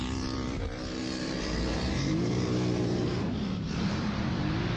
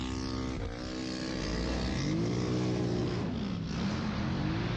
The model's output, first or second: first